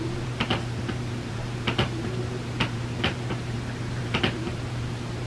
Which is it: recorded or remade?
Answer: remade